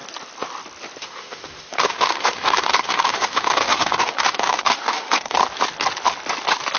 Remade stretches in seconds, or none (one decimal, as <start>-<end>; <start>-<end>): 1.0-5.4